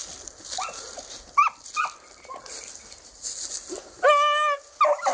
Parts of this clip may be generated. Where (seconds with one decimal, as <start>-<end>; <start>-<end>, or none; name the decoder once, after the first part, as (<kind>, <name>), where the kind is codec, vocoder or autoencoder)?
none